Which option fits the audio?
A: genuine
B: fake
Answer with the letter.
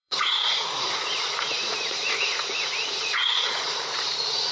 B